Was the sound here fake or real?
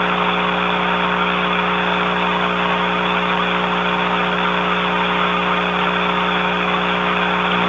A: real